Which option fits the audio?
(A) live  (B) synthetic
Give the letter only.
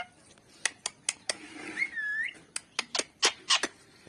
A